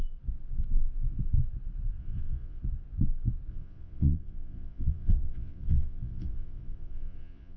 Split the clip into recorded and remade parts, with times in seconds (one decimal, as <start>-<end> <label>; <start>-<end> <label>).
0.0-2.0 recorded; 2.0-2.6 remade; 2.6-3.5 recorded; 3.5-7.6 remade